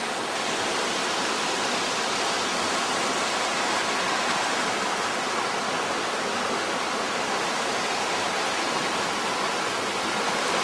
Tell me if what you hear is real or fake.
real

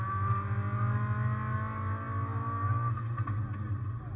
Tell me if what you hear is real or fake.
real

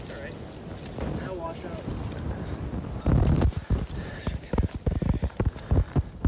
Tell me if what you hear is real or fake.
real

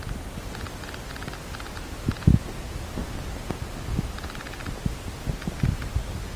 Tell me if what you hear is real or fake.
real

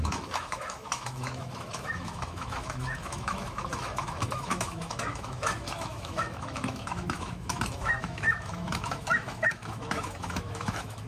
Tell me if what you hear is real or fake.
fake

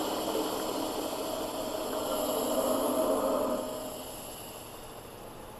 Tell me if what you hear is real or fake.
real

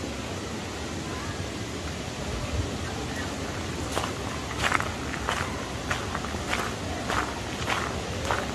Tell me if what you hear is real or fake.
real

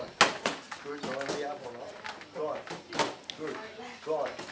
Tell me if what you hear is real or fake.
real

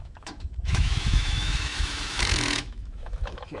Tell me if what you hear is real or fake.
fake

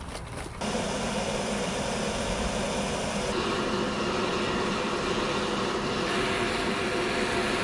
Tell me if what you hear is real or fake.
real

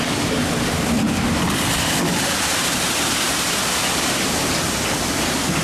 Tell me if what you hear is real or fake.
real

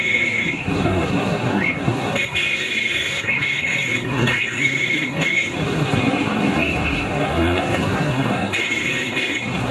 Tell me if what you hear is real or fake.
fake